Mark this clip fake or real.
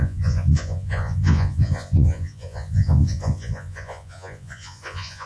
fake